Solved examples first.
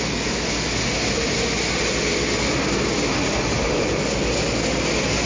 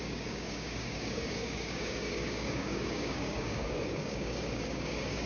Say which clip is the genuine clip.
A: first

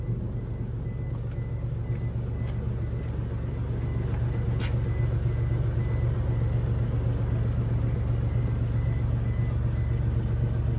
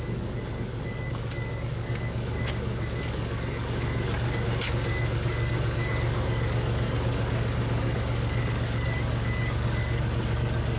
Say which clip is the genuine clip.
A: first